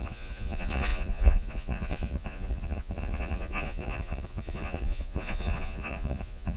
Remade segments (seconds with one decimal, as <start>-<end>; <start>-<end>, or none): 0.0-6.6